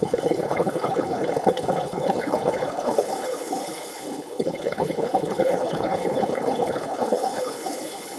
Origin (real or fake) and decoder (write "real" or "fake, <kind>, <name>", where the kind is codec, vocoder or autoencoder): fake, codec, HILCodec